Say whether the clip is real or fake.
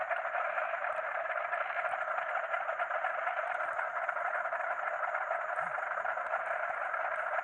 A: real